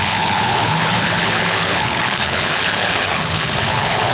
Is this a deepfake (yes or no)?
yes